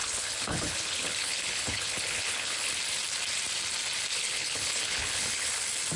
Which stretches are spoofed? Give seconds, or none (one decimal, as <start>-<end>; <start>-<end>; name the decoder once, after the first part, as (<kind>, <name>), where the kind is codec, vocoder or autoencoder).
0.0-2.7 (codec, HILCodec); 4.1-5.5

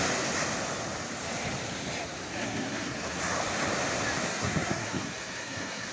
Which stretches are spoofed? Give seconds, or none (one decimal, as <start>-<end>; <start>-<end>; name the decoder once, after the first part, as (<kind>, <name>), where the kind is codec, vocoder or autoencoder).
2.4-3.2 (codec, SNAC); 4.3-5.9